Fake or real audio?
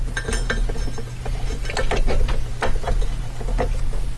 real